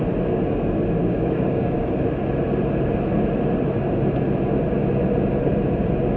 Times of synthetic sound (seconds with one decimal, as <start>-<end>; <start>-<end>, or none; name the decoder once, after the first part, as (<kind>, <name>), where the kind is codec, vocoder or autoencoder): 1.0-2.0 (codec, DAC)